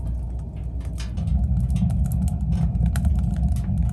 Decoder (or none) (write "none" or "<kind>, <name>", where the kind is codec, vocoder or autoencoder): none